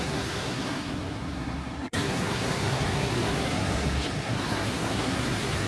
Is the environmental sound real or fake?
fake